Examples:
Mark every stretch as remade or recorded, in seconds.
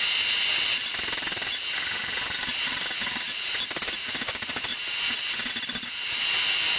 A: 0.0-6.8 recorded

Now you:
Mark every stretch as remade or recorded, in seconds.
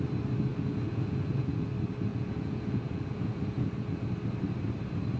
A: 0.0-0.5 recorded; 0.5-1.7 remade; 1.7-2.1 recorded; 2.1-4.1 remade; 4.1-5.2 recorded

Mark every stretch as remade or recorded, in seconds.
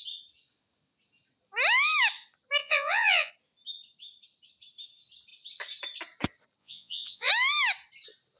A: 0.0-2.6 recorded; 2.6-3.3 remade; 3.3-6.6 recorded; 6.6-7.3 remade; 7.3-8.4 recorded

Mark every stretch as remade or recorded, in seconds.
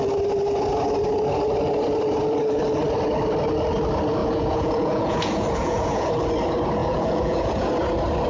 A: 0.0-4.2 recorded; 4.2-6.1 remade; 6.1-6.8 recorded; 6.8-7.7 remade; 7.7-8.3 recorded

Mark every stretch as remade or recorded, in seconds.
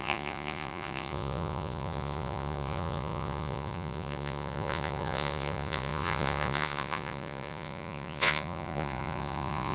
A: 0.0-9.7 remade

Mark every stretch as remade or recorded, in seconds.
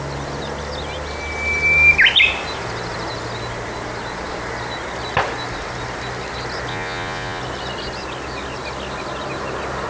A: 0.0-6.7 recorded; 6.7-7.4 remade; 7.4-9.9 recorded